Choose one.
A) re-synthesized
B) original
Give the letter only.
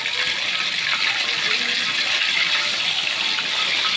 B